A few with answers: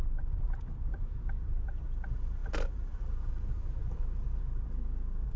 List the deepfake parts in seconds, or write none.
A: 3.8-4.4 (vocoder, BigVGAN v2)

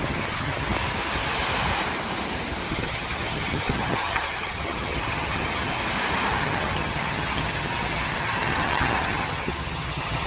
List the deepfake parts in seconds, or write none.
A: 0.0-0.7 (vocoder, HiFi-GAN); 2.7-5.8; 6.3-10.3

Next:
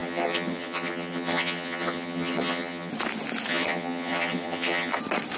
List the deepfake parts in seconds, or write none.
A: 0.0-2.9 (vocoder, HiFi-GAN); 3.5-5.0

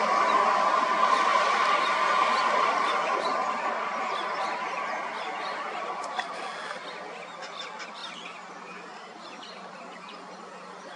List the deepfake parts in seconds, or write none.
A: none

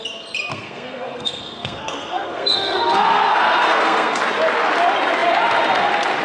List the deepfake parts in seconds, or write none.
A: 0.5-4.2 (codec, SNAC)

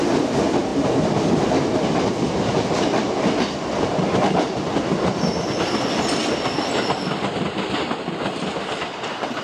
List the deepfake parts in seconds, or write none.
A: none

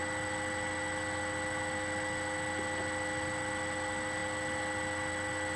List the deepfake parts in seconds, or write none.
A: none